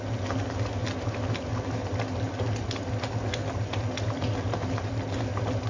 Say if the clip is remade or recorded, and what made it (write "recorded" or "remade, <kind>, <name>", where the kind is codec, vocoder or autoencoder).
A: recorded